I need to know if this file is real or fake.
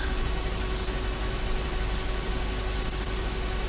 real